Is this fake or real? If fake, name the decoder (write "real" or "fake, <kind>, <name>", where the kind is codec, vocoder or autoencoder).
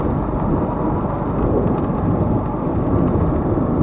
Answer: real